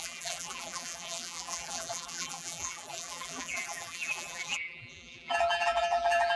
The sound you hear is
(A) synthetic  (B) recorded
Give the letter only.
A